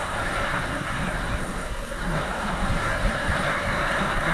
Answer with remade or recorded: remade